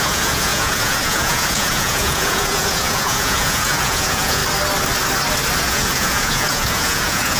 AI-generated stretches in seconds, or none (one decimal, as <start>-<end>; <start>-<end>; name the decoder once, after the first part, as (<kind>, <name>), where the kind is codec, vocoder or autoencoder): 0.0-4.4 (vocoder, Vocos); 5.7-7.4